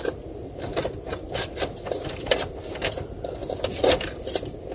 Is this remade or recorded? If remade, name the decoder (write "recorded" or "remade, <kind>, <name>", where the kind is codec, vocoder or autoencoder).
recorded